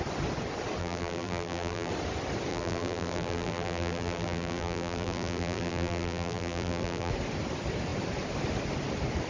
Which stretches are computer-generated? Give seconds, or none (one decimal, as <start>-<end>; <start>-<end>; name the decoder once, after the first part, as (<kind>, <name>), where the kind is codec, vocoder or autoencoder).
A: 0.8-1.9 (vocoder, BigVGAN v2); 2.5-7.1